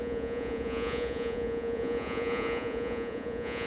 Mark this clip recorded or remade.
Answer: remade